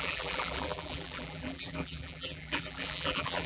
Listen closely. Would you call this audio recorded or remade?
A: remade